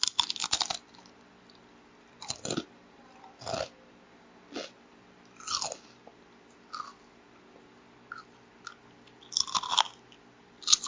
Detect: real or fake real